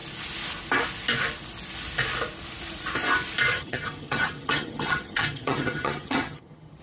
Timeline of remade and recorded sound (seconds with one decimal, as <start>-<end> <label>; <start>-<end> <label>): 0.0-3.5 recorded; 3.5-6.8 remade